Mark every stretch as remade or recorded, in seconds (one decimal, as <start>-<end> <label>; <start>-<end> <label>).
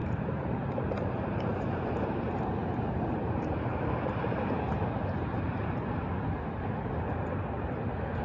0.0-2.4 remade; 2.4-3.2 recorded; 3.2-6.0 remade; 6.0-8.2 recorded